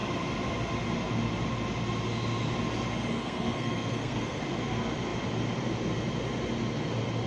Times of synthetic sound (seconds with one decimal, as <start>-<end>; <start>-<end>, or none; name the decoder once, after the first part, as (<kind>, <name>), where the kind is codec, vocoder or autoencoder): 3.1-4.4 (codec, SNAC)